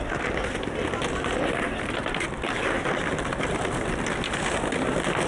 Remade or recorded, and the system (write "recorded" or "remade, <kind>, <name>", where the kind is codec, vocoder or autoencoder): recorded